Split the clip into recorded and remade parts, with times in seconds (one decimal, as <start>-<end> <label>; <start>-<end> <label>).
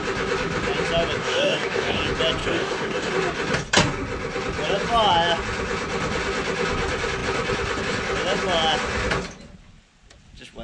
0.0-1.2 recorded; 1.2-2.0 remade; 2.0-2.4 recorded; 2.4-3.1 remade; 3.1-10.6 recorded